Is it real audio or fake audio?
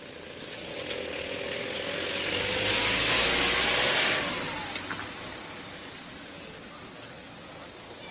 real